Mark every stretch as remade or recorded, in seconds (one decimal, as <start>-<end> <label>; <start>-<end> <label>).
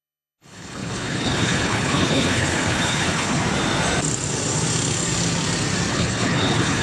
0.0-3.4 remade; 3.4-5.9 recorded; 5.9-6.8 remade